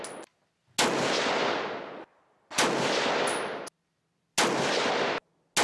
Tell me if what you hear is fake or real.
real